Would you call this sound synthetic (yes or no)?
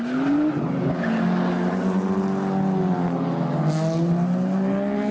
no